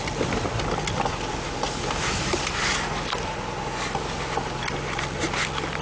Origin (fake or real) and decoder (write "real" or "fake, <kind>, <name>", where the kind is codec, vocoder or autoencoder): fake, vocoder, BigVGAN v2